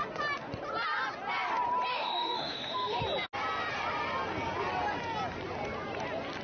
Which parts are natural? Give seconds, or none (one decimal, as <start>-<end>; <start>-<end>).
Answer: 0.0-1.9; 3.0-6.4